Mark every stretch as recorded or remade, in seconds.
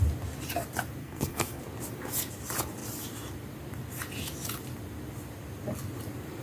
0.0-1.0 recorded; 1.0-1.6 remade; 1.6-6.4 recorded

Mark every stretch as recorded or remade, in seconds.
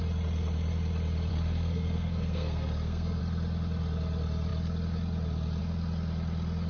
0.0-1.3 recorded; 1.3-3.2 remade; 3.2-6.7 recorded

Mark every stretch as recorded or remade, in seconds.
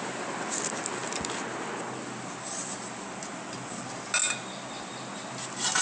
0.0-5.8 recorded